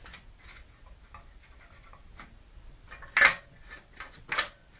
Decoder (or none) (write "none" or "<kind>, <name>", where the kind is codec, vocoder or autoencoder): none